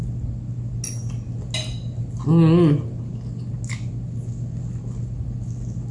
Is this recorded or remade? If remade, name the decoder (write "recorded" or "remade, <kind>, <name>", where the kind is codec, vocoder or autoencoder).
recorded